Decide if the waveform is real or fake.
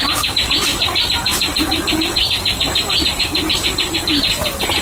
real